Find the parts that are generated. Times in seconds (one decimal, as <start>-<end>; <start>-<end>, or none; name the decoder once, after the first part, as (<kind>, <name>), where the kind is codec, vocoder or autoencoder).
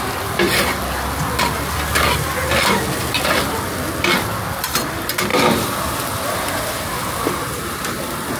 none